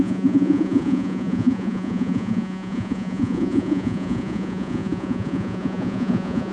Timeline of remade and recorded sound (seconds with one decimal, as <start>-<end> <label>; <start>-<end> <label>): 0.0-6.5 remade

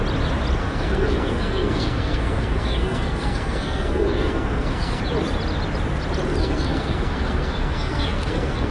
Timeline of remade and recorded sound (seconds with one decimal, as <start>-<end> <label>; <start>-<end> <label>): 0.0-0.6 recorded; 0.6-5.0 remade; 5.0-6.4 recorded; 6.4-8.7 remade

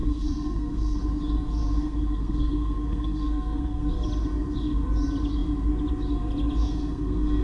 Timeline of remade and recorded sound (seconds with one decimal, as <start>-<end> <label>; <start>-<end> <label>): 0.0-1.0 remade; 1.0-1.6 recorded; 1.6-3.9 remade; 3.9-6.6 recorded; 6.6-7.4 remade

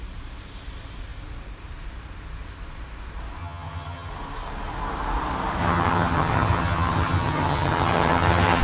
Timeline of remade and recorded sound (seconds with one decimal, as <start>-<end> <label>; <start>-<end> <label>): 0.0-3.4 recorded; 3.4-4.1 remade; 4.1-5.6 recorded; 5.6-8.6 remade

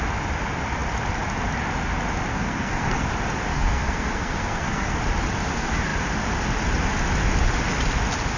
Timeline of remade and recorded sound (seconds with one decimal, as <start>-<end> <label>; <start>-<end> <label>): 0.0-2.3 recorded; 2.3-3.1 remade; 3.1-3.5 recorded; 3.5-5.0 remade; 5.0-8.4 recorded

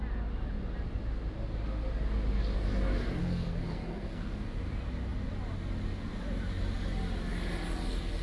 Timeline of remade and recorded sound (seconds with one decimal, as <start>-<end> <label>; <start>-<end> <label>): 0.0-3.2 recorded; 3.2-4.3 remade; 4.3-8.2 recorded

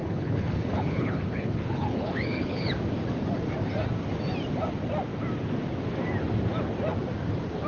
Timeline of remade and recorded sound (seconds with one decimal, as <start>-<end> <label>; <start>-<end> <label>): 0.0-2.7 remade; 2.7-7.7 recorded

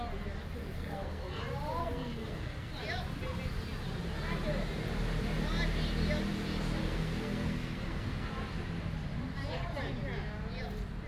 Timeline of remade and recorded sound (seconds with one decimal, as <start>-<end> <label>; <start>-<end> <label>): 0.0-0.6 recorded; 0.6-1.4 remade; 1.4-1.8 recorded; 1.8-2.7 remade; 2.7-6.8 recorded; 6.8-8.3 remade; 8.3-11.1 recorded